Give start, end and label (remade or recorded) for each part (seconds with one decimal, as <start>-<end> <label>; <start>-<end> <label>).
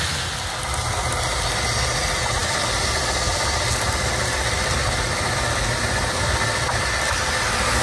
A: 0.0-7.8 recorded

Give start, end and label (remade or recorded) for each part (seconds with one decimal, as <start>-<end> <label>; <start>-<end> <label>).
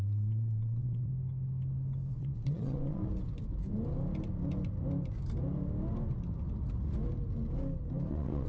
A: 0.0-1.1 remade; 1.1-2.1 recorded; 2.1-3.0 remade; 3.0-8.1 recorded; 8.1-8.5 remade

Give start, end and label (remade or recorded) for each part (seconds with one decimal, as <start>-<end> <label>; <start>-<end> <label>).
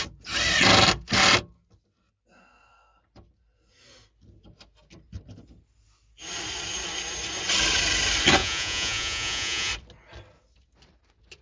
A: 0.0-8.4 recorded; 8.4-9.7 remade; 9.7-11.4 recorded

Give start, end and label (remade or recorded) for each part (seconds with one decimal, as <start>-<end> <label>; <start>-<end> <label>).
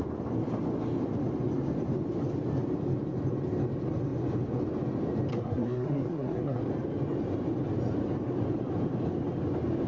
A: 0.0-5.3 recorded; 5.3-6.6 remade; 6.6-9.9 recorded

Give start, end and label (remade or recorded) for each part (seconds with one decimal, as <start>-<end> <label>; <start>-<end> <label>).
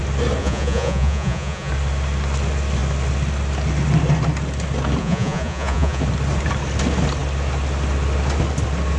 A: 0.0-0.4 recorded; 0.4-1.7 remade; 1.7-5.0 recorded; 5.0-6.0 remade; 6.0-9.0 recorded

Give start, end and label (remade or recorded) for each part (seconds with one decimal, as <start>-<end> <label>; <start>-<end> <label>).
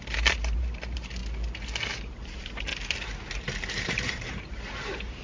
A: 0.0-1.2 remade; 1.2-1.9 recorded; 1.9-2.7 remade; 2.7-3.7 recorded; 3.7-5.2 remade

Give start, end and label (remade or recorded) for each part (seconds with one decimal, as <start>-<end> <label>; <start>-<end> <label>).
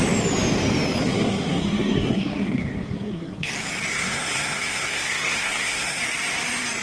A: 0.0-1.0 recorded; 1.0-3.5 remade; 3.5-3.9 recorded; 3.9-6.0 remade; 6.0-6.8 recorded